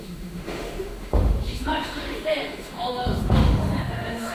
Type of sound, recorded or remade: remade